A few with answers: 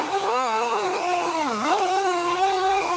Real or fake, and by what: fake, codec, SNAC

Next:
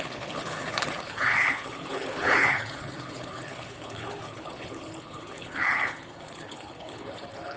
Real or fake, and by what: fake, codec, HILCodec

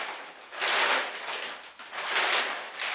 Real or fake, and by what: real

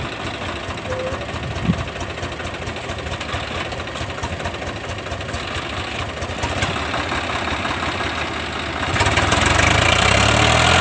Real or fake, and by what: real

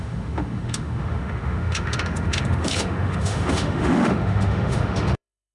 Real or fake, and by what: fake, autoencoder, DAC-VAE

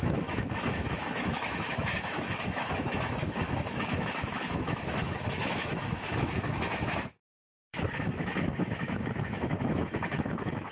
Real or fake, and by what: fake, autoencoder, DAC-VAE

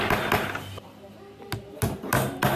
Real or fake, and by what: real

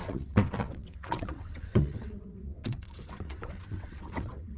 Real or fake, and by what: fake, vocoder, WaveNeXt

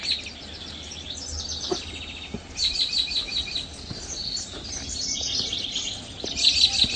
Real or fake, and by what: real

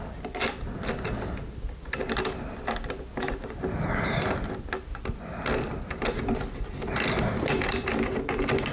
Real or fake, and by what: real